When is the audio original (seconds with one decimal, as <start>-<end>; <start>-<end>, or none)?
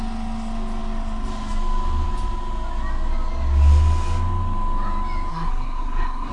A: 0.0-5.3